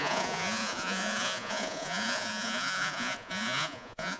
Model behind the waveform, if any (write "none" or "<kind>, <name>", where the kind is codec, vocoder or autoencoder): vocoder, Vocos